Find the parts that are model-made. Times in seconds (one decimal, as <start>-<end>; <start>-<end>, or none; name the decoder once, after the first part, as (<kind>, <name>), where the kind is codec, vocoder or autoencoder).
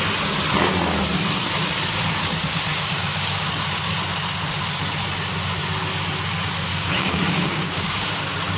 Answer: 2.7-3.5 (codec, DAC); 6.7-8.1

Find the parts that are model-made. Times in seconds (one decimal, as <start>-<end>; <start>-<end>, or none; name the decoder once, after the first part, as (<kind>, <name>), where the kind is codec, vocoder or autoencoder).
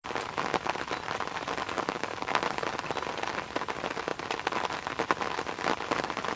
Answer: 1.6-2.4 (codec, DAC)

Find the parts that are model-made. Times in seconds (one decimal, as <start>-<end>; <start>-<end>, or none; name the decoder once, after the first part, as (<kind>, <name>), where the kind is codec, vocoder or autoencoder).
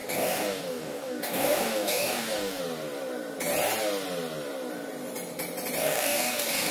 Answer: 0.0-2.6 (codec, DAC); 5.8-6.7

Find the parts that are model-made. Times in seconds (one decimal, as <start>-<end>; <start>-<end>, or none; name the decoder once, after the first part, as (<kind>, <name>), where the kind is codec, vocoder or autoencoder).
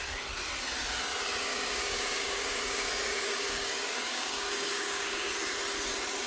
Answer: 1.5-5.3 (codec, DAC)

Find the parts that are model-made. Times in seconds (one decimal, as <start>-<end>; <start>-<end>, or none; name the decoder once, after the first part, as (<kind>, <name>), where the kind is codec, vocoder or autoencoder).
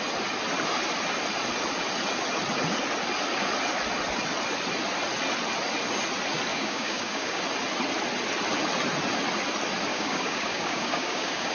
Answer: 6.5-7.4 (codec, DAC); 9.9-11.5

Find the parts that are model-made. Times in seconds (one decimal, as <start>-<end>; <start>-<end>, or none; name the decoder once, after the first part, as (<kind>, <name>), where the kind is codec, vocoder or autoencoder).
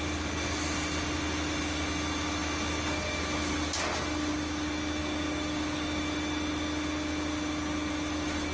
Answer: 5.0-6.0 (codec, DAC)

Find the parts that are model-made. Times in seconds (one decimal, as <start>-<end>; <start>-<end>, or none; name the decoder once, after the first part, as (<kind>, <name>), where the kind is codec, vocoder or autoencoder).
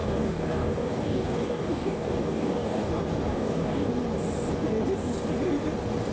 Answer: 0.0-2.9 (codec, DAC); 3.3-3.9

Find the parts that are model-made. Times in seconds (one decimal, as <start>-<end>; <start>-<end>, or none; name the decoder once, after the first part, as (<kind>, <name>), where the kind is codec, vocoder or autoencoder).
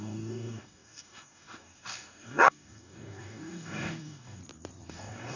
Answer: 0.0-4.4 (codec, DAC); 4.9-5.4